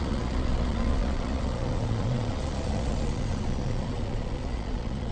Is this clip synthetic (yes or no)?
yes